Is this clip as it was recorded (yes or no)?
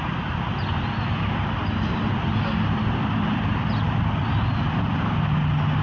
yes